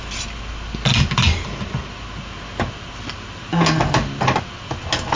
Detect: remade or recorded recorded